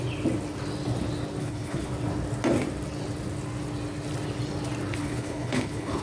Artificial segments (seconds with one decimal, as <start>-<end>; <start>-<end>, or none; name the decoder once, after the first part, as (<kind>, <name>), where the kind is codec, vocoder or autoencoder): 1.4-1.9 (codec, HILCodec); 5.0-6.0